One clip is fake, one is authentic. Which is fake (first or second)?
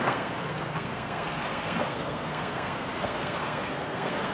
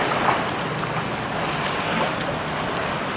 first